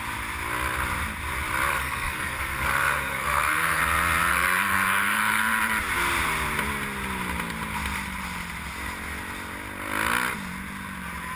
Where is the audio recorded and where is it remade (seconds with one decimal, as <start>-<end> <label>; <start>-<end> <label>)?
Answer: 0.0-1.7 recorded; 1.7-3.8 remade; 3.8-4.3 recorded; 4.3-5.4 remade; 5.4-11.4 recorded